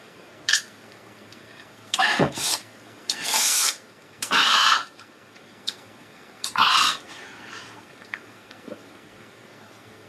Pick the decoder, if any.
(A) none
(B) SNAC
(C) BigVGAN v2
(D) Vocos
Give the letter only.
B